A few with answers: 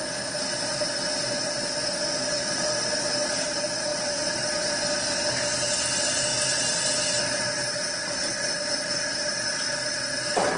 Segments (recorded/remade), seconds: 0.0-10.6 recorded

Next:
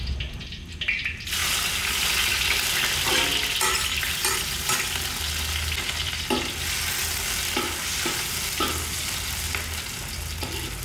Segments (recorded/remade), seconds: 0.0-10.8 recorded

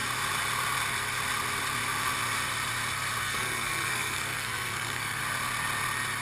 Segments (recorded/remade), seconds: 0.0-3.2 recorded; 3.2-5.2 remade; 5.2-6.2 recorded

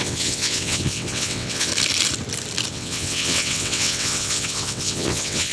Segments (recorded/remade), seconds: 0.0-1.7 remade; 1.7-2.7 recorded; 2.7-5.5 remade